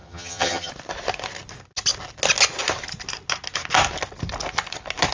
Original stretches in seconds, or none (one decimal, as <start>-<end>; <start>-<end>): 0.7-5.1

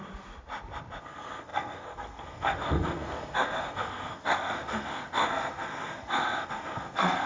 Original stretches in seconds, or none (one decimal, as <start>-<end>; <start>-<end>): 0.0-1.0

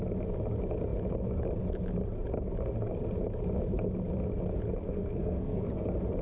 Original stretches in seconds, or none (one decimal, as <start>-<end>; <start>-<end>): 0.0-4.8; 5.6-6.2